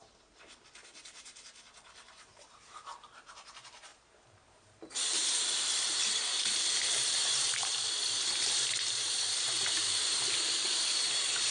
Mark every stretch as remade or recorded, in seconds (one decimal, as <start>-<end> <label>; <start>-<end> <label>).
0.0-11.5 remade